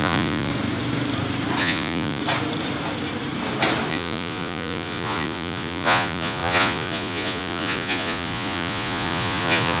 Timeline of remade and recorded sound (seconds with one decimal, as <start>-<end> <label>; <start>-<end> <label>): 0.0-0.5 remade; 0.5-1.6 recorded; 1.6-2.2 remade; 2.2-3.9 recorded; 3.9-9.8 remade